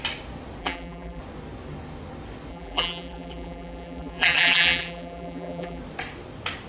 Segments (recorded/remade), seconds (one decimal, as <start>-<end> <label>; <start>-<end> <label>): 0.0-0.6 recorded; 0.6-1.2 remade; 1.2-2.5 recorded; 2.5-5.8 remade; 5.8-6.7 recorded